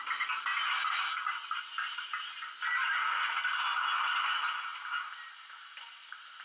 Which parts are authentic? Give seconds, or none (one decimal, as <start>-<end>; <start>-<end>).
0.0-6.4